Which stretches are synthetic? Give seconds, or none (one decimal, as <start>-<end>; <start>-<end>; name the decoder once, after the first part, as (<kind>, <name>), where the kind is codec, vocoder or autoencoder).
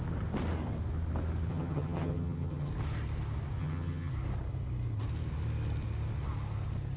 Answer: 1.5-2.7 (vocoder, HiFi-GAN); 3.6-4.1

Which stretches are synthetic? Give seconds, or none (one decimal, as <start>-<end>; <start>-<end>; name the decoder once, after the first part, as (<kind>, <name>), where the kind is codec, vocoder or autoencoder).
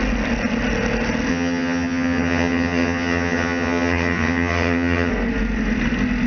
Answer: 1.3-5.1 (vocoder, HiFi-GAN)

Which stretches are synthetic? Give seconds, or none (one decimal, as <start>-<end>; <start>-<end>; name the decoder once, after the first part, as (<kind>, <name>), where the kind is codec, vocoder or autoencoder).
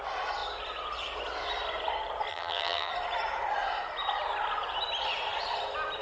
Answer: 2.3-2.9 (vocoder, HiFi-GAN)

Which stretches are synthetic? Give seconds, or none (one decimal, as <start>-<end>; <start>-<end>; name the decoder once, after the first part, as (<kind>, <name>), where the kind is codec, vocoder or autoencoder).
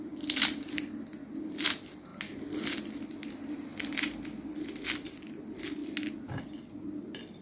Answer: none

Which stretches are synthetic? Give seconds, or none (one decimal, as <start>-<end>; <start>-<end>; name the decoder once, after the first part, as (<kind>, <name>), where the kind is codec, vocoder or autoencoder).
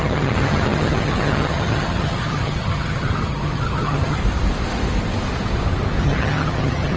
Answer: 0.0-4.2 (vocoder, HiFi-GAN); 6.0-7.0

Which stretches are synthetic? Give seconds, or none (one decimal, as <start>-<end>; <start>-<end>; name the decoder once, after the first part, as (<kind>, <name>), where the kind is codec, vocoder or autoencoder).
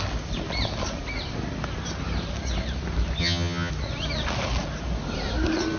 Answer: 3.2-3.7 (vocoder, HiFi-GAN)